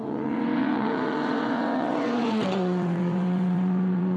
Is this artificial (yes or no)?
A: yes